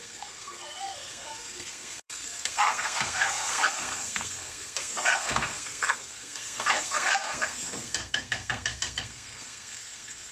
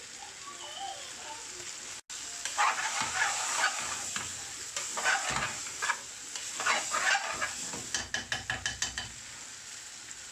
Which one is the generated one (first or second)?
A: first